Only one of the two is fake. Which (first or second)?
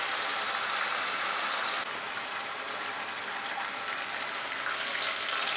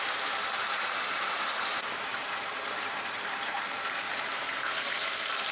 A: second